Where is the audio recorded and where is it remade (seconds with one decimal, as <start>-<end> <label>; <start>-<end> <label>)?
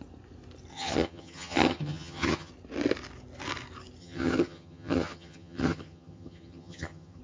0.0-0.7 recorded; 0.7-2.5 remade; 2.5-4.0 recorded; 4.0-7.2 remade